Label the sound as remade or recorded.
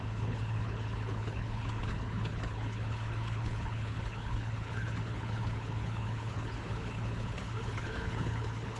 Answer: remade